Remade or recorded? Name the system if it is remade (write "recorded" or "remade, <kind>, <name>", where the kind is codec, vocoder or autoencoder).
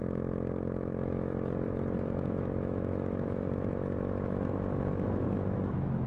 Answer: remade, autoencoder, DAC-VAE